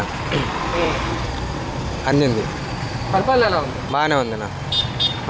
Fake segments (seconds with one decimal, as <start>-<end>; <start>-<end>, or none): 0.7-3.9; 4.8-5.3